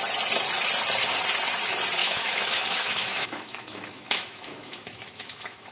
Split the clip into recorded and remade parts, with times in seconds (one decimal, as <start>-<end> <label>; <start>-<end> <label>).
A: 0.0-2.0 recorded; 2.0-5.7 remade